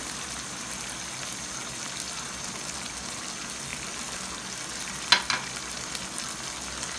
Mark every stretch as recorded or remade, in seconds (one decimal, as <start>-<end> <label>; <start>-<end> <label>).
0.0-7.0 recorded